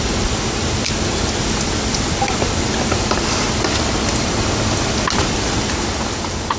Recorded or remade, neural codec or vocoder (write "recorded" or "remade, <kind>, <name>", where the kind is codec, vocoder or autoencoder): recorded